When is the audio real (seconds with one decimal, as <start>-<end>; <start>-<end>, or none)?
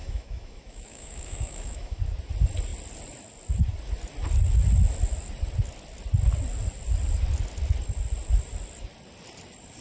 2.0-9.8